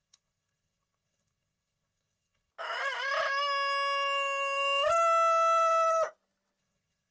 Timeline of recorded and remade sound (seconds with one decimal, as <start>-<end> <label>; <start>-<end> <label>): 0.0-2.5 remade; 2.5-6.6 recorded; 6.6-7.1 remade